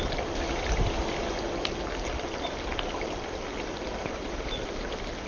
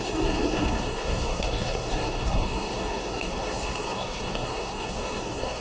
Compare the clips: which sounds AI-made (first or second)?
second